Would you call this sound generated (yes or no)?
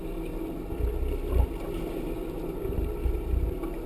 no